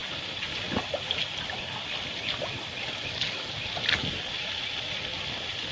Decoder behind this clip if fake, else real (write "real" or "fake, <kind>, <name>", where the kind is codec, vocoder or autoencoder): real